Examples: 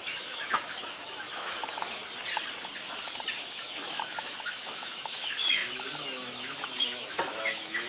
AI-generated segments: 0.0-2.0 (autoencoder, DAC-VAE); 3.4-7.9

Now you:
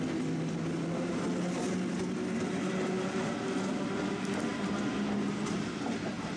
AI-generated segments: none

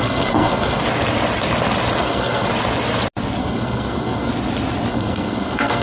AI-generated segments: 0.0-0.8 (codec, SNAC); 2.0-2.5; 3.4-4.3; 4.9-5.8

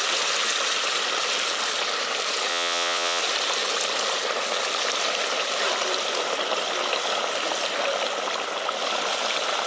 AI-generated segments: 2.5-3.2 (vocoder, WaveNeXt)

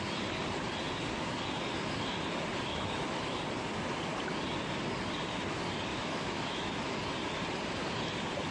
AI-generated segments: 2.7-3.4 (autoencoder, DAC-VAE); 5.9-6.7

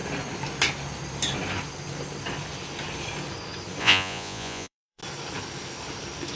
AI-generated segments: 3.8-5.0 (vocoder, Vocos)

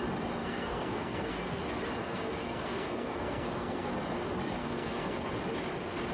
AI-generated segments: 0.4-1.6 (codec, SNAC); 2.0-3.9; 4.6-5.3

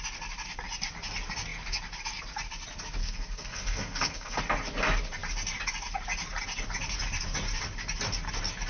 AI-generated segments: 3.0-4.4 (codec, SNAC)